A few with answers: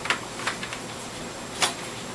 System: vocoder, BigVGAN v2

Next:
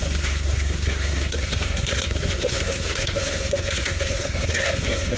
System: codec, SNAC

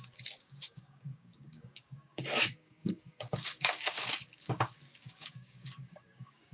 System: codec, DAC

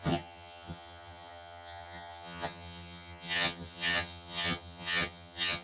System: vocoder, HiFi-GAN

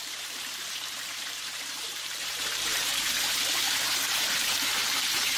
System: vocoder, BigVGAN v2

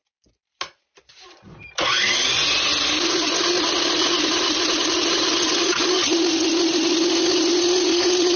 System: none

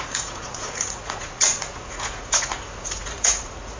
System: vocoder, Vocos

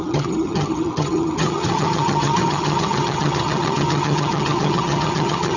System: vocoder, HiFi-GAN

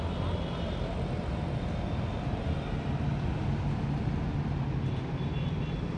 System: none